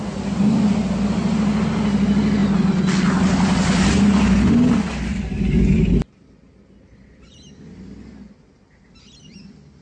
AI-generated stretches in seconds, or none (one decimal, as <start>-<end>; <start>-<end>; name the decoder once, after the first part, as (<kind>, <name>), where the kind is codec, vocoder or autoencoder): none